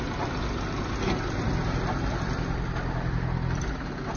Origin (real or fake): real